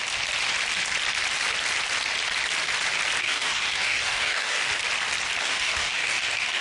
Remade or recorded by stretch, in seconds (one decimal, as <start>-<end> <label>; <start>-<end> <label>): 0.0-3.2 recorded; 3.2-4.7 remade; 4.7-5.4 recorded; 5.4-6.6 remade